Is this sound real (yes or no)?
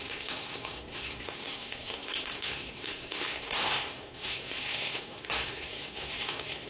no